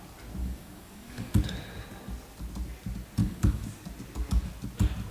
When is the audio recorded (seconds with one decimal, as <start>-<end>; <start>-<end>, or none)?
0.0-0.4; 1.3-3.2; 3.7-5.1